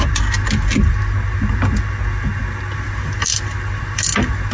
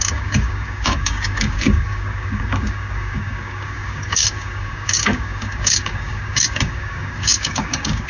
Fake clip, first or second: second